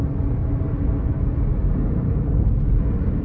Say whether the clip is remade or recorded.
recorded